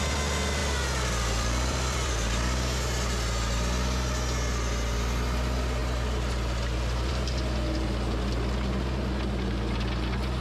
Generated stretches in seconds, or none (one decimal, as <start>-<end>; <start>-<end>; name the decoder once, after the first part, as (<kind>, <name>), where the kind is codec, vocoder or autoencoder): 0.6-2.1 (vocoder, BigVGAN v2); 5.8-7.1